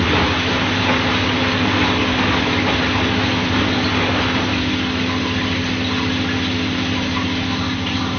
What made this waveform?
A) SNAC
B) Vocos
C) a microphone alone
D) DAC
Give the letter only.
C